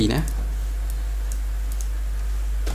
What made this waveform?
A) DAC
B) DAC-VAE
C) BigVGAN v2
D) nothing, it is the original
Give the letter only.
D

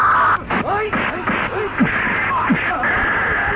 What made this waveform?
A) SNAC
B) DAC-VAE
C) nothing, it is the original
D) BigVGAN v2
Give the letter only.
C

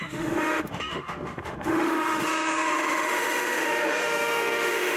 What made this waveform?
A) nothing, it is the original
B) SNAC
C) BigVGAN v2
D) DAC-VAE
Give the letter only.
D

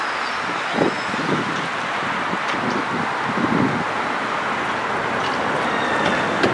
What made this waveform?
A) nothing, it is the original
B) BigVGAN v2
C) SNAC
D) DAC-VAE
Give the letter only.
A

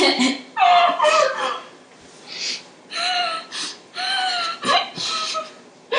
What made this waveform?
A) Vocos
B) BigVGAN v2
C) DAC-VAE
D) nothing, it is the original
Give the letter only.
D